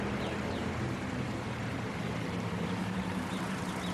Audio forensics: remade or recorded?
remade